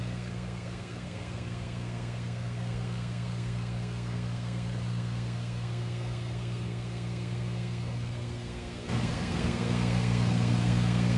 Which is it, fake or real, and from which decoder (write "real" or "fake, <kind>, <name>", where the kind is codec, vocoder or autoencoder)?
fake, codec, SNAC